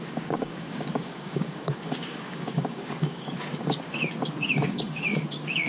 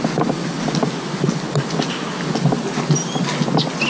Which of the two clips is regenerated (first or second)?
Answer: first